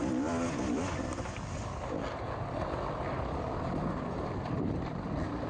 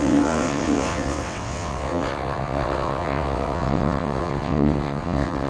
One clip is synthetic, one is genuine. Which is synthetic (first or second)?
second